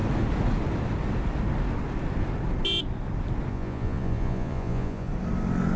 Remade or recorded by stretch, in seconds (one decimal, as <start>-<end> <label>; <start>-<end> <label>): 0.0-3.5 recorded; 3.5-5.1 remade; 5.1-5.8 recorded